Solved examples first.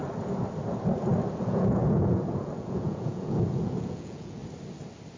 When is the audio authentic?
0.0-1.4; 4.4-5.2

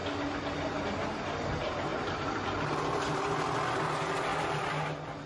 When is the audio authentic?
0.0-5.3